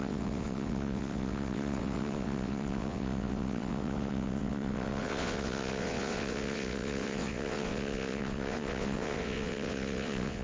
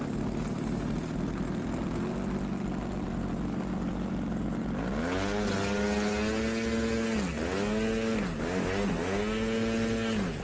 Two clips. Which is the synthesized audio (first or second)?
first